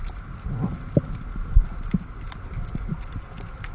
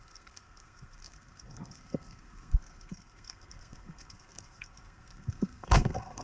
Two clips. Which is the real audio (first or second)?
first